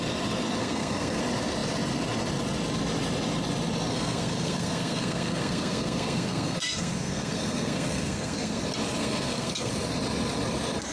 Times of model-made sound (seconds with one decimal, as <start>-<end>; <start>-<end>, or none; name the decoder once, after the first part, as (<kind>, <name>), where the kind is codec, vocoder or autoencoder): 0.6-1.2 (codec, SNAC); 3.9-8.6; 9.0-9.7